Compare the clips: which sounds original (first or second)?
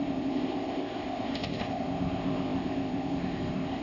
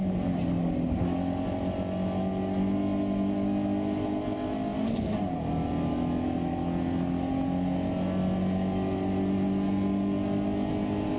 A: second